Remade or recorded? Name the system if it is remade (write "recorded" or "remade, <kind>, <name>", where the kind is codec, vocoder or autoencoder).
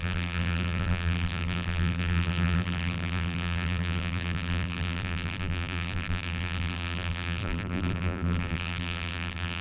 remade, vocoder, BigVGAN v2